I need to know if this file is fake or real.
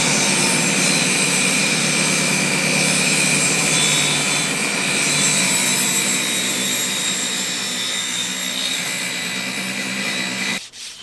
fake